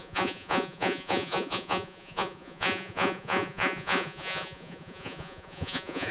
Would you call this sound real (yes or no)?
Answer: no